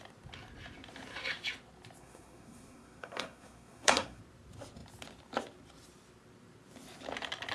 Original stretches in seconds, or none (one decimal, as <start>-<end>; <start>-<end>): 0.0-2.0; 4.2-7.5